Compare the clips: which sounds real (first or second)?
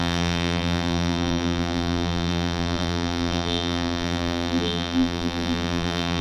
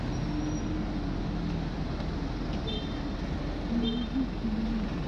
second